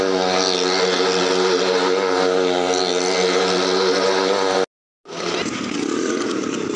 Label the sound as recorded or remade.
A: recorded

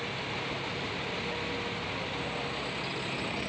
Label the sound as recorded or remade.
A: recorded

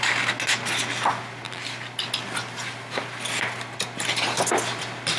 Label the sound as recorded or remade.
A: recorded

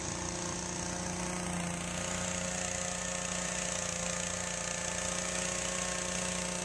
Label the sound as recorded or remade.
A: recorded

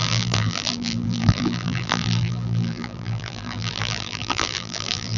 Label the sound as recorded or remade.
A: remade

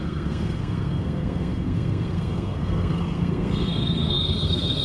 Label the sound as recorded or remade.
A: remade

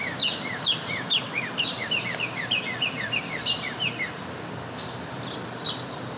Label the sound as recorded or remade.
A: remade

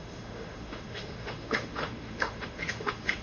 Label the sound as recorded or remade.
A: remade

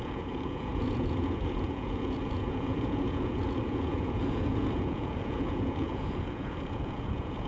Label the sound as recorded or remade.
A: remade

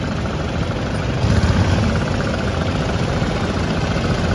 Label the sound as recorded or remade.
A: recorded